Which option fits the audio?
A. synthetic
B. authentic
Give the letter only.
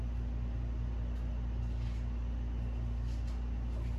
B